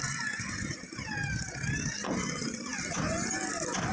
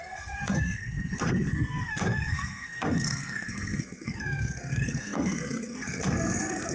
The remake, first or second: second